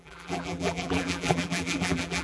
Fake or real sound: fake